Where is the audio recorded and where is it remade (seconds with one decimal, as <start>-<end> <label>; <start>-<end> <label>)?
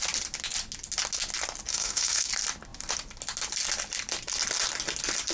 0.0-1.7 recorded; 1.7-2.3 remade; 2.3-5.3 recorded